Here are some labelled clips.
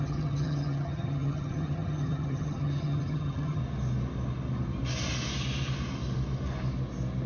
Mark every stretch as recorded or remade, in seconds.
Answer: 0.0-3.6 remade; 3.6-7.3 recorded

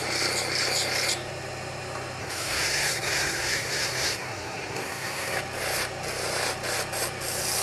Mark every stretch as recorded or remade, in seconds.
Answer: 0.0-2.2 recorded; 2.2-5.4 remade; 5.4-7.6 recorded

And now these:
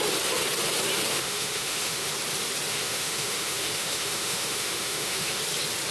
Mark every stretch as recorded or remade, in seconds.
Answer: 0.0-1.1 recorded; 1.1-2.1 remade; 2.1-2.7 recorded; 2.7-5.4 remade; 5.4-5.9 recorded

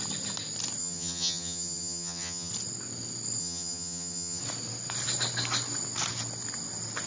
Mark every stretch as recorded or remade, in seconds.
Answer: 0.0-0.8 recorded; 0.8-2.5 remade; 2.5-3.4 recorded; 3.4-4.4 remade; 4.4-7.1 recorded

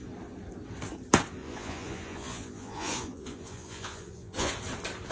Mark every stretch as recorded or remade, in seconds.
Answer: 0.0-1.4 recorded; 1.4-4.5 remade; 4.5-5.1 recorded

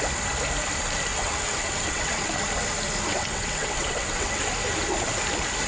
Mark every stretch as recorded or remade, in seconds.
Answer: 0.0-1.1 recorded; 1.1-2.3 remade; 2.3-3.1 recorded; 3.1-4.4 remade; 4.4-5.7 recorded